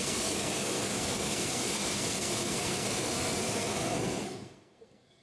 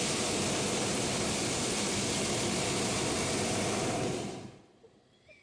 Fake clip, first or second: first